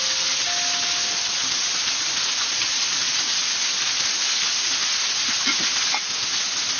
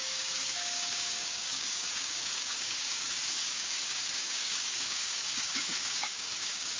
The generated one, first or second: second